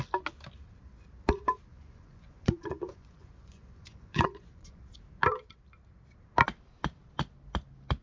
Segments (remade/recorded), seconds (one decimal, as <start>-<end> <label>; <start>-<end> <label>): 0.0-1.7 recorded; 1.7-4.8 remade; 4.8-8.0 recorded